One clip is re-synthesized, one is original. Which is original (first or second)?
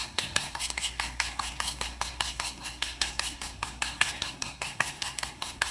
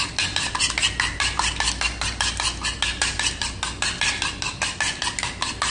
second